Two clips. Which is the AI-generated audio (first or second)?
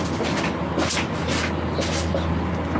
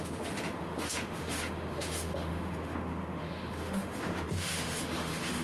second